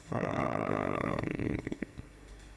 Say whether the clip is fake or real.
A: fake